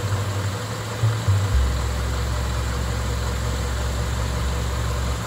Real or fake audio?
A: real